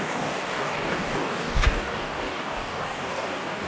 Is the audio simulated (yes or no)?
yes